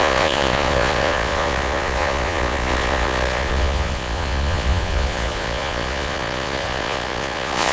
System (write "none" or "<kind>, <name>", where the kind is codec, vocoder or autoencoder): vocoder, Vocos